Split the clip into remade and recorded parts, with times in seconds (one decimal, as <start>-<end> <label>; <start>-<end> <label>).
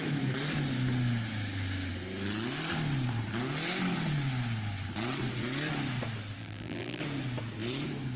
0.0-6.4 recorded; 6.4-7.0 remade; 7.0-8.2 recorded